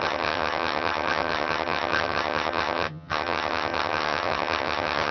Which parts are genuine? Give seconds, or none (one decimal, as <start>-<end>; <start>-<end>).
none